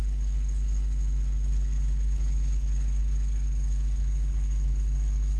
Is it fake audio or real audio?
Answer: fake